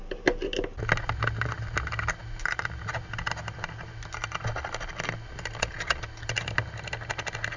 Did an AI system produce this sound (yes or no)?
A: no